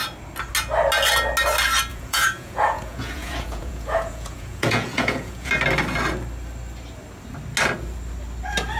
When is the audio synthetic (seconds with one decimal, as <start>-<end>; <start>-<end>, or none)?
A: 1.9-5.5